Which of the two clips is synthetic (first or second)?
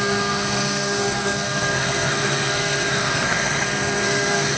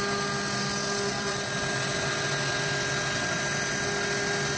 first